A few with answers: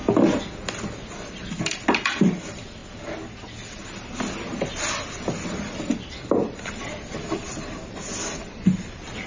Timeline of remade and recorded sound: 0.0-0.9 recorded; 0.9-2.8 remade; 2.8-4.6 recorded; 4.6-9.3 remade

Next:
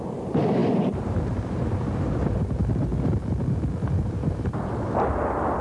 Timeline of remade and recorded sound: 0.0-2.9 remade; 2.9-4.0 recorded; 4.0-5.6 remade

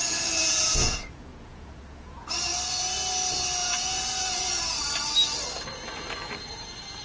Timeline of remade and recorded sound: 0.0-2.3 remade; 2.3-3.6 recorded; 3.6-4.9 remade; 4.9-7.0 recorded

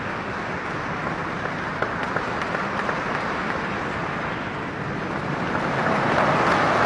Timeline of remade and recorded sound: 0.0-1.2 recorded; 1.2-5.3 remade; 5.3-6.9 recorded